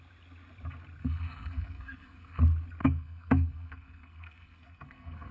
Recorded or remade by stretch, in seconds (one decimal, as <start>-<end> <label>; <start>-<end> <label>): 0.0-1.0 recorded; 1.0-2.4 remade; 2.4-2.8 recorded; 2.8-5.3 remade